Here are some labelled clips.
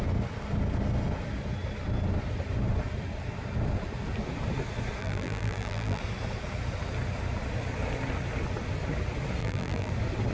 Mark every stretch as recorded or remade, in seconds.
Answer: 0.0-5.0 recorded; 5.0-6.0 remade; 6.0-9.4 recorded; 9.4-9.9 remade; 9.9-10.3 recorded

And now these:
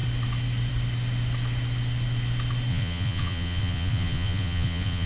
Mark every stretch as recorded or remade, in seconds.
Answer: 0.0-2.7 recorded; 2.7-5.1 remade

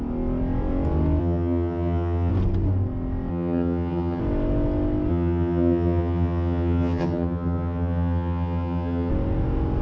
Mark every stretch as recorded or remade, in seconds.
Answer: 0.0-1.2 recorded; 1.2-2.3 remade; 2.3-3.3 recorded; 3.3-4.2 remade; 4.2-5.1 recorded; 5.1-9.1 remade; 9.1-9.8 recorded

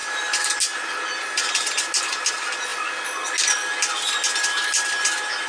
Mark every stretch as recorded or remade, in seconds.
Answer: 0.0-5.5 recorded

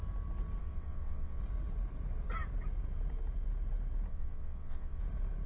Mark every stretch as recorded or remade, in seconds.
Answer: 0.0-0.6 recorded; 0.6-1.4 remade; 1.4-4.1 recorded; 4.1-5.0 remade; 5.0-5.5 recorded

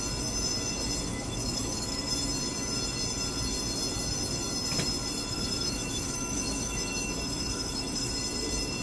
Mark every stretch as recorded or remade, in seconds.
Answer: 0.0-1.1 recorded; 1.1-2.1 remade; 2.1-5.3 recorded; 5.3-8.1 remade; 8.1-8.8 recorded